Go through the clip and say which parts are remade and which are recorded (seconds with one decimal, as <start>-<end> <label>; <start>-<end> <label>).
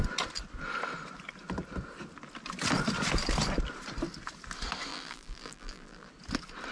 0.0-4.9 recorded; 4.9-6.1 remade; 6.1-6.7 recorded